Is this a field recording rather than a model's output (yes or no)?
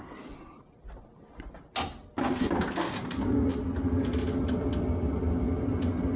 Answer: yes